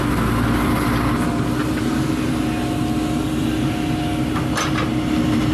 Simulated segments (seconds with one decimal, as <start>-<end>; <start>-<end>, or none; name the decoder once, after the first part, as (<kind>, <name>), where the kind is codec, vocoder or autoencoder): none

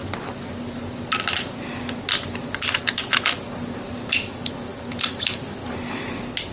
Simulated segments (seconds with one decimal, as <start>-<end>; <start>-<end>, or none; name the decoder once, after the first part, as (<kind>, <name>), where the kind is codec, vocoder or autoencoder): none

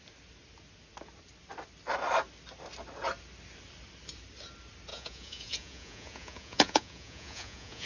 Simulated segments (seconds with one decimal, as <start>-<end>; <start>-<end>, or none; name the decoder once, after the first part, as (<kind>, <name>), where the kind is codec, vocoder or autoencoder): 4.9-7.9 (vocoder, Vocos)

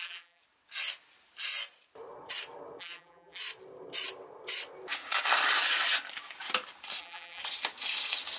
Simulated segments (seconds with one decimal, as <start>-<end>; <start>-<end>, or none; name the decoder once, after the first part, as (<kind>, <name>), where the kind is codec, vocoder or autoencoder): 0.0-0.4 (vocoder, BigVGAN v2); 2.8-3.4; 7.0-7.4